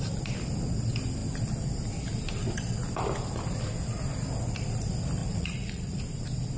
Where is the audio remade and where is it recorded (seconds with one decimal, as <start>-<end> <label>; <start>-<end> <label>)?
0.0-5.2 recorded; 5.2-6.0 remade; 6.0-6.6 recorded